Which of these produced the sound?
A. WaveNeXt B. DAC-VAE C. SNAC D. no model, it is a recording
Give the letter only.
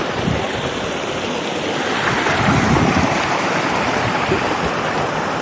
D